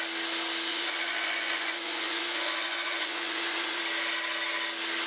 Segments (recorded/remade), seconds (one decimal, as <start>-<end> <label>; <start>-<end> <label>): 0.0-0.7 recorded; 0.7-3.8 remade; 3.8-5.1 recorded